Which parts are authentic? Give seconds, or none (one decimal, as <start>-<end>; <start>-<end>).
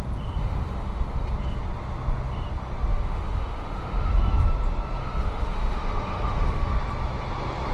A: 0.0-0.4; 1.3-2.9; 4.1-5.0; 6.7-7.7